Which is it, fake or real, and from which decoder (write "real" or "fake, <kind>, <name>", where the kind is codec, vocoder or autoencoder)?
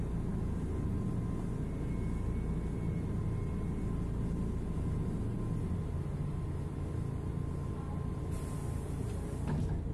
real